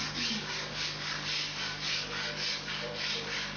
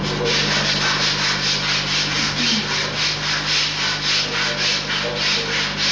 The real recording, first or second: second